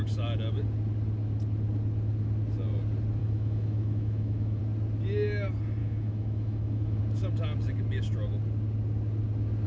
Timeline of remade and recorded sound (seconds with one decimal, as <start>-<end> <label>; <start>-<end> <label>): 0.0-3.2 recorded; 3.2-4.6 remade; 4.6-5.8 recorded; 5.8-7.0 remade; 7.0-9.7 recorded